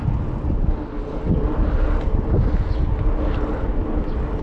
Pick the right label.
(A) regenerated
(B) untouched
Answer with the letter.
B